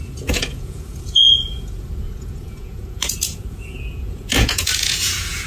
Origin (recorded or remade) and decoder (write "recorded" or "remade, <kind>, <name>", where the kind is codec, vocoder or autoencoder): remade, vocoder, Vocos